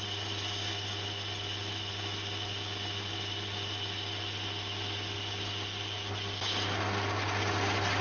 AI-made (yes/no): no